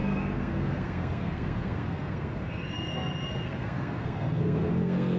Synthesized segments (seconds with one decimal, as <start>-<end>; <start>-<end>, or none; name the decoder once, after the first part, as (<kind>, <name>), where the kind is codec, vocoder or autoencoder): 0.0-5.2 (codec, SNAC)